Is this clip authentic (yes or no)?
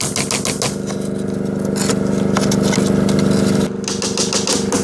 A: yes